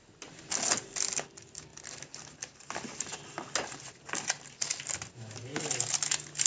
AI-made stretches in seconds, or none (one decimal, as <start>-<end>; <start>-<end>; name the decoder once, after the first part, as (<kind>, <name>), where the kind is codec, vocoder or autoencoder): none